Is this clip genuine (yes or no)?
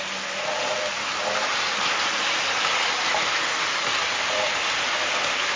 yes